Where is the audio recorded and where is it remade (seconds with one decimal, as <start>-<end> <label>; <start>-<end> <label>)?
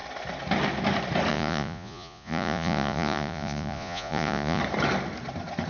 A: 0.0-1.3 recorded; 1.3-4.6 remade; 4.6-5.7 recorded